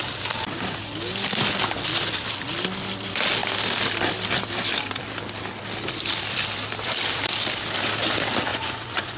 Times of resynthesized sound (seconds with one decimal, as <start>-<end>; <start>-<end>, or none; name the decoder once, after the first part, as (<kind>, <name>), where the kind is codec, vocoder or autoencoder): 8.5-9.2 (vocoder, Vocos)